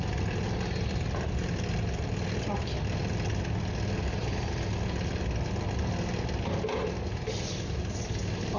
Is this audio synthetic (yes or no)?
no